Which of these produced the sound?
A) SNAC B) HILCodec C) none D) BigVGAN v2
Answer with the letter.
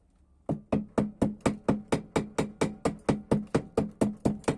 C